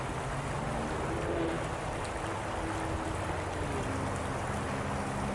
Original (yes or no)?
yes